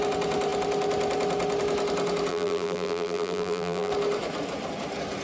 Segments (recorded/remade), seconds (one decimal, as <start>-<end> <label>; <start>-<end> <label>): 0.0-2.3 recorded; 2.3-3.9 remade; 3.9-5.2 recorded